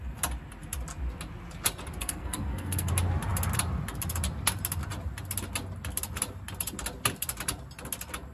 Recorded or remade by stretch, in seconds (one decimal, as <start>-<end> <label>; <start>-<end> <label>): 0.0-2.0 recorded; 2.0-2.9 remade; 2.9-8.3 recorded